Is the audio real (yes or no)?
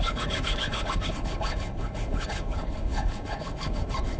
no